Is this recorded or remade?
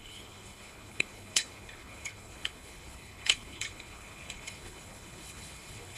remade